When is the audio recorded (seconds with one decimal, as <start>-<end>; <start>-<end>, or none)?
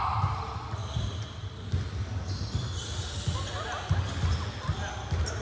0.0-5.4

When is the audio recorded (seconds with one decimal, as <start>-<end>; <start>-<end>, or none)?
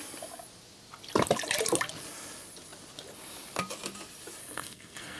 0.0-4.4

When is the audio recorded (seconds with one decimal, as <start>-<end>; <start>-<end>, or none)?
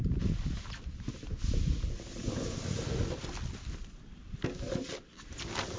0.0-5.8